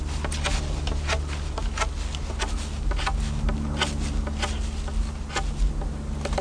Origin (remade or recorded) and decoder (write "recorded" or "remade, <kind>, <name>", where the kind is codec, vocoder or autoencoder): recorded